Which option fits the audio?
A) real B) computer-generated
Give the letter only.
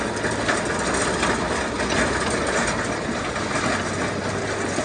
A